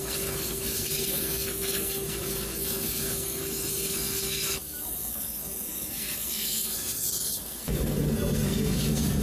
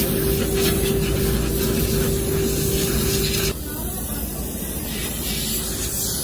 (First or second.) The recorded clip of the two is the second